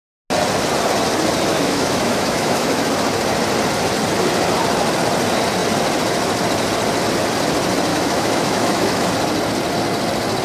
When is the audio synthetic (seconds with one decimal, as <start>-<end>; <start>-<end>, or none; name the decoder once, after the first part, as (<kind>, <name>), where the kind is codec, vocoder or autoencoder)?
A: 1.5-2.9 (autoencoder, DAC-VAE); 7.9-9.1